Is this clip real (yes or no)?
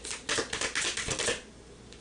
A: yes